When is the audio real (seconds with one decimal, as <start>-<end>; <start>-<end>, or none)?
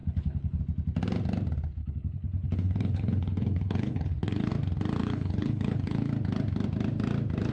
0.6-1.8; 4.5-5.0; 6.1-7.5